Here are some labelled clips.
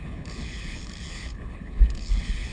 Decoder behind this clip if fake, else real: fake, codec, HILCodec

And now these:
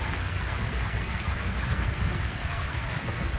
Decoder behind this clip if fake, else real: fake, codec, SNAC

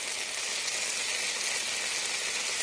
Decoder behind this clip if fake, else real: real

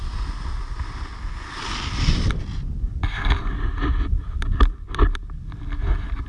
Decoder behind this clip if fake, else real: real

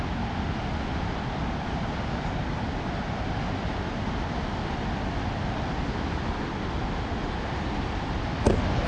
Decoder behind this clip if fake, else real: real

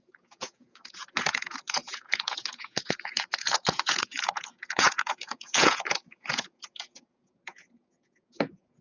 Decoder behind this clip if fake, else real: fake, vocoder, Vocos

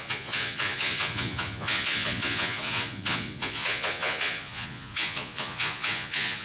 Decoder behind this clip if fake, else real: fake, vocoder, Vocos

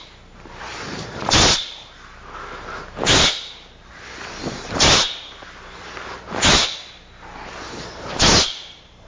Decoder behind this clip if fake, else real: real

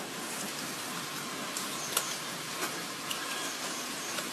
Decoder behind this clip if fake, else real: real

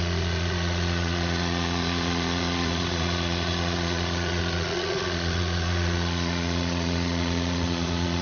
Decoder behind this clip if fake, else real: fake, vocoder, Vocos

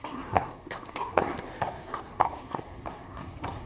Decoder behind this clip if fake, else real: fake, codec, SNAC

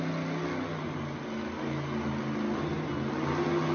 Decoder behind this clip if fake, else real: real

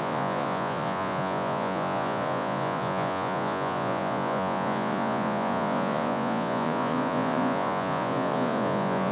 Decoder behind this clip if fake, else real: fake, vocoder, Vocos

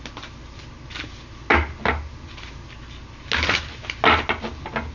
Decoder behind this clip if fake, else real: real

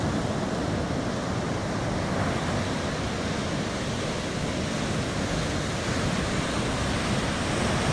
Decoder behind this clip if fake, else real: real